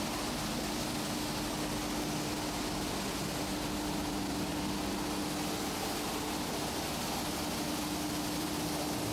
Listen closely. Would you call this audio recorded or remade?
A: recorded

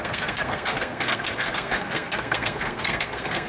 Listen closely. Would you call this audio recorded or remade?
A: remade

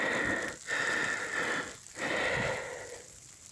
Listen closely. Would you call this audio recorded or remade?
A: recorded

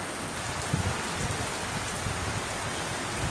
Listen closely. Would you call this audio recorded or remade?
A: recorded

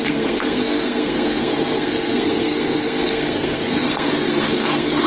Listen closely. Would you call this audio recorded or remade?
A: remade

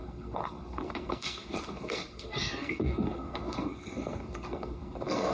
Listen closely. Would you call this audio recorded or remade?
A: remade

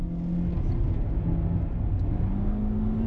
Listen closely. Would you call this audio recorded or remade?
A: recorded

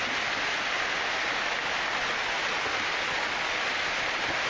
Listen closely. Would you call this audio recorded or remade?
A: recorded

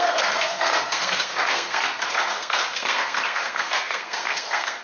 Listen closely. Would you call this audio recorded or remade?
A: remade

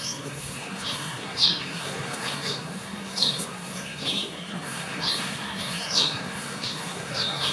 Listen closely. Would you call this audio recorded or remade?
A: remade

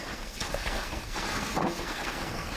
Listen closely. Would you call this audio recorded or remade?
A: remade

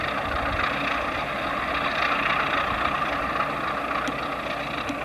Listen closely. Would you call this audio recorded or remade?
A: recorded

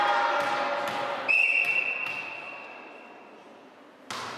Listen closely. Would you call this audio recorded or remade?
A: recorded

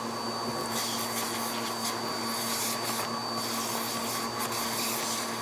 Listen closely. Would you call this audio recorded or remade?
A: recorded